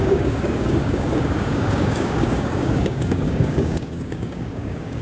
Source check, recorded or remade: remade